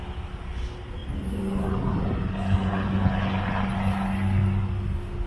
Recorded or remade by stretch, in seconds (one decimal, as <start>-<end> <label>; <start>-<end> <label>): 0.0-5.3 recorded